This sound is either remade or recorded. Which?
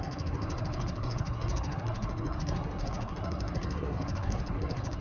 remade